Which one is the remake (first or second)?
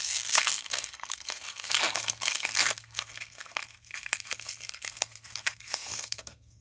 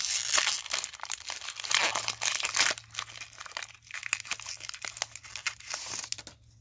first